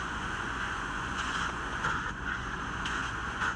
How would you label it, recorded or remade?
remade